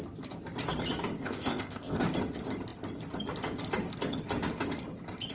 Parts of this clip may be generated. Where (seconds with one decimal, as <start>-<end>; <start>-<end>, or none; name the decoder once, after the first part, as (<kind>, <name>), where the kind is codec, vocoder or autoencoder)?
1.2-2.0 (codec, ZipCodec)